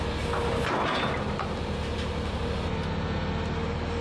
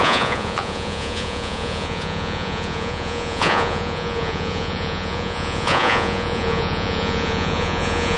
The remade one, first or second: second